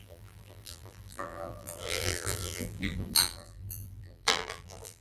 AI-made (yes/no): yes